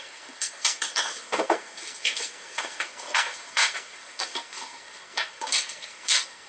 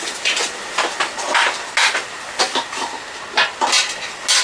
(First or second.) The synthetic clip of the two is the first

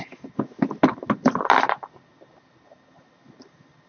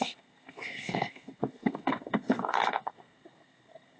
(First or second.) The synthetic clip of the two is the second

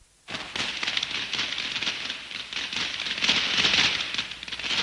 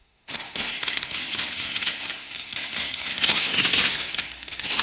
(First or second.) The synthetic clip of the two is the second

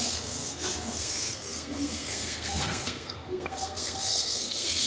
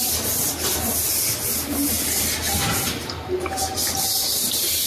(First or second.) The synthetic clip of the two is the first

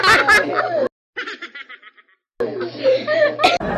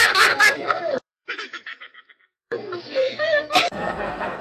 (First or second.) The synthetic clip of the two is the second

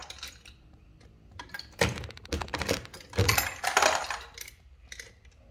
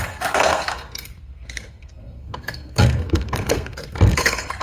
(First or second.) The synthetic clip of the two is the second